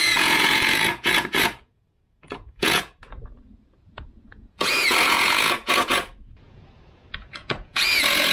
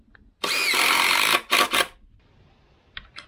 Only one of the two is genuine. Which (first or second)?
second